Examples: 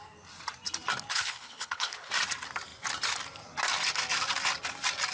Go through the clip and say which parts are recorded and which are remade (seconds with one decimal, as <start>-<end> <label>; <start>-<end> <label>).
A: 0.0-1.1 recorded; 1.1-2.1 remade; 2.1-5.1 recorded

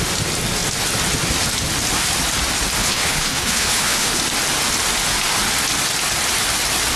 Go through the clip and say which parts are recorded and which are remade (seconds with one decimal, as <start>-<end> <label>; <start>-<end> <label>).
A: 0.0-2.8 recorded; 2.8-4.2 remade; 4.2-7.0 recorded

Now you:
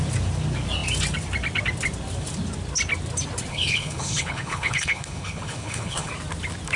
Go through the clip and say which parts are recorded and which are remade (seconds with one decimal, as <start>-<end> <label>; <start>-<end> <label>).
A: 0.0-3.5 recorded; 3.5-6.1 remade; 6.1-6.8 recorded

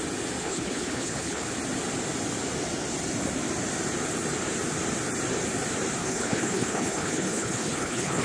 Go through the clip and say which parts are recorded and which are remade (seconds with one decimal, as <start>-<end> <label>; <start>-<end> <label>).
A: 0.0-0.4 recorded; 0.4-1.5 remade; 1.5-6.0 recorded; 6.0-8.2 remade

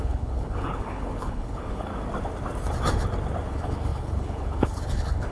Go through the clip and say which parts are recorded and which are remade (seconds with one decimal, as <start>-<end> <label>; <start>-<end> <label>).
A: 0.0-1.9 remade; 1.9-3.5 recorded; 3.5-5.3 remade

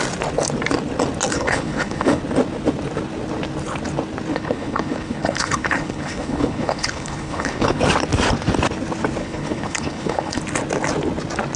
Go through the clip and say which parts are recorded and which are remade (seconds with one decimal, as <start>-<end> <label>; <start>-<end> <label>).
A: 0.0-1.3 recorded; 1.3-2.2 remade; 2.2-4.3 recorded; 4.3-7.8 remade; 7.8-9.2 recorded; 9.2-10.4 remade; 10.4-11.6 recorded